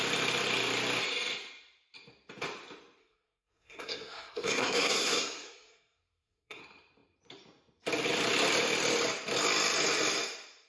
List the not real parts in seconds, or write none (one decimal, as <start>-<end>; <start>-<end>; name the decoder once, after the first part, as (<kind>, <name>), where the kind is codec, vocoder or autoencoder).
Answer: 3.0-6.6 (codec, SNAC)